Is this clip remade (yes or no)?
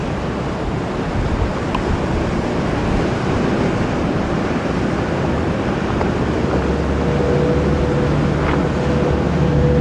no